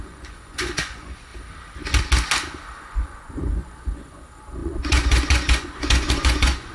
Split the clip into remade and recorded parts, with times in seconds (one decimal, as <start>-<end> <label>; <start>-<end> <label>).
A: 0.0-1.3 remade; 1.3-2.8 recorded; 2.8-6.7 remade